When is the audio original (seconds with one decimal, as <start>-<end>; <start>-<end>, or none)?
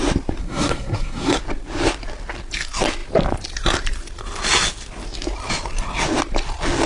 0.0-0.4; 1.4-6.9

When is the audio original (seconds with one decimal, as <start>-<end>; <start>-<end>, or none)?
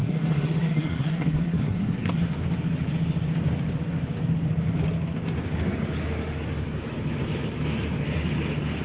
2.2-8.8